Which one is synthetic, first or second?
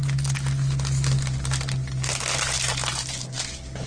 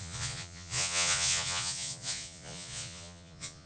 second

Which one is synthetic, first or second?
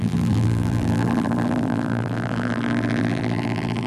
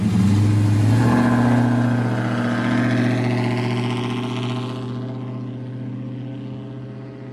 first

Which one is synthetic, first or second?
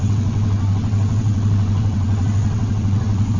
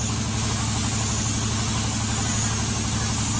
first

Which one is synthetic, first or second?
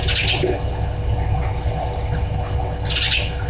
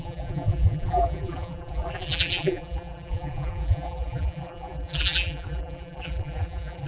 second